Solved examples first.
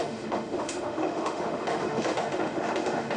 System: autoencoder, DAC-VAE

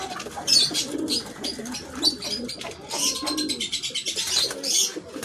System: none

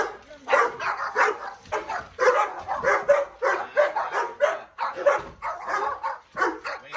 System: none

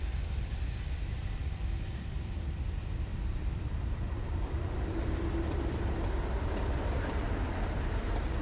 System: vocoder, BigVGAN v2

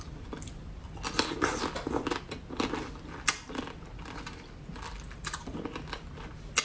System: none